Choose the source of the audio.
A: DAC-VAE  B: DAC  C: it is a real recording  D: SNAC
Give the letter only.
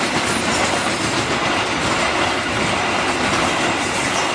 C